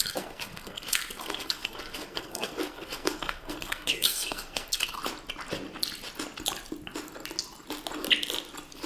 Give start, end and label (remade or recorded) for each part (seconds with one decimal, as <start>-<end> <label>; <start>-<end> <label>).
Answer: 0.0-5.0 remade; 5.0-8.9 recorded